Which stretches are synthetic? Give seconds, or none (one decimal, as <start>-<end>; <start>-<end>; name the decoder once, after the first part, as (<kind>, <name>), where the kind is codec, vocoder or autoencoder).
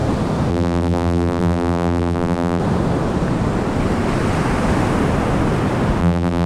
0.5-2.6 (vocoder, BigVGAN v2); 6.0-6.5